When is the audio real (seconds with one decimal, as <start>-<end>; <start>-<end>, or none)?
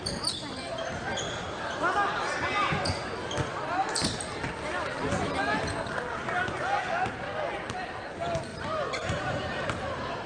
0.0-8.5